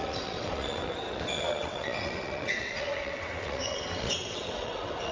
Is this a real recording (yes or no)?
no